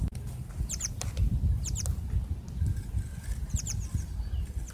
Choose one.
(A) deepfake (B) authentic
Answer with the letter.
B